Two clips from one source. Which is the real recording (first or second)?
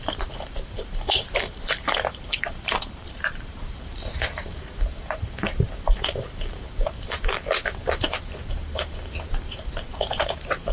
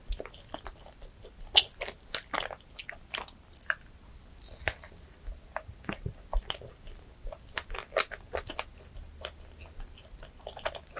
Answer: second